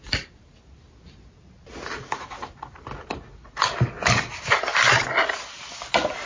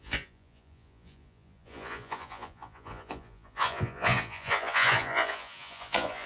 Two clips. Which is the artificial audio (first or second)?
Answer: second